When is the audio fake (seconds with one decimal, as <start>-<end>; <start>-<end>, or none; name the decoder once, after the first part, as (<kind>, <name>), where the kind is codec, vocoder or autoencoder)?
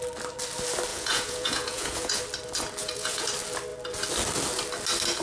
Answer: 0.9-2.2 (vocoder, Vocos); 2.8-3.3